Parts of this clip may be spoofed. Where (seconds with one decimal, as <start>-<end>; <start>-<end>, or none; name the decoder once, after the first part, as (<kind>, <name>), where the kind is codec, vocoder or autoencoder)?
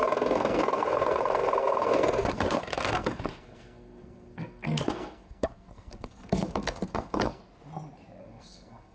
0.0-7.4 (codec, SNAC); 8.2-8.9